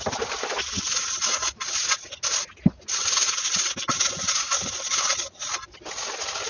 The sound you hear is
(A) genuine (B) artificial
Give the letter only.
A